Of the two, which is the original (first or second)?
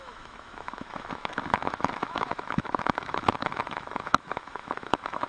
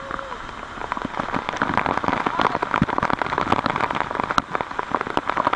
second